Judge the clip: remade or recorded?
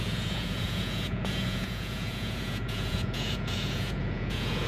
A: remade